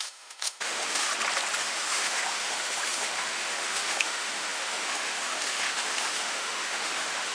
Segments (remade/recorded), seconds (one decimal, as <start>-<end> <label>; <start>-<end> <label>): 0.0-1.1 remade; 1.1-1.6 recorded; 1.6-7.3 remade